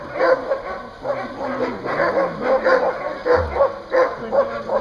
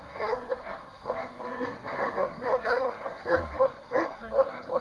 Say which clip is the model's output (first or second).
second